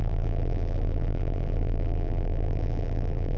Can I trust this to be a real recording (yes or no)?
no